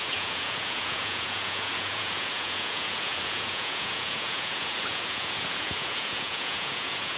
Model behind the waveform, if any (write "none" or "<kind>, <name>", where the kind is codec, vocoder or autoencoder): vocoder, Vocos